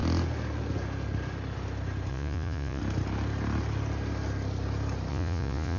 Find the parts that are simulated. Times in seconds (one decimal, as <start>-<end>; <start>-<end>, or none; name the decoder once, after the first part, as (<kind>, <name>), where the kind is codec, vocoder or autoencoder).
2.1-2.8 (vocoder, Vocos); 5.1-5.8